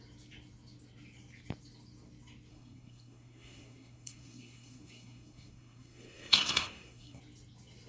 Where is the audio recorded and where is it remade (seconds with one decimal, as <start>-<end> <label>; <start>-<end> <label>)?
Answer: 0.0-2.5 recorded; 2.5-7.2 remade; 7.2-7.9 recorded